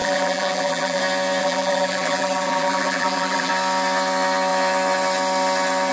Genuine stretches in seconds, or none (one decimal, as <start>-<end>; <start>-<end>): 1.0-1.4; 3.5-5.9